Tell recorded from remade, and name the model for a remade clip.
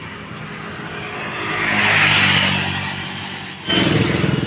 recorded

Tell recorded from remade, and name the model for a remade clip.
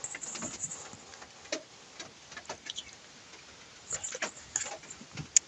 recorded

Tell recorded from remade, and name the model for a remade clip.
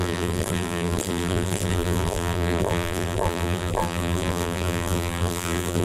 remade, vocoder, BigVGAN v2